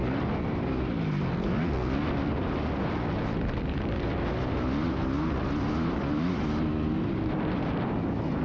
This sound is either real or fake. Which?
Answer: real